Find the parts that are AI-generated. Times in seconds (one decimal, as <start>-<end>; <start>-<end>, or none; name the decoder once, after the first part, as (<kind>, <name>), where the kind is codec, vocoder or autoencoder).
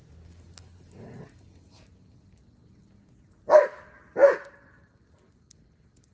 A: none